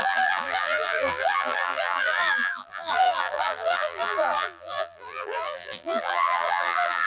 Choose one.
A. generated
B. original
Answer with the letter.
A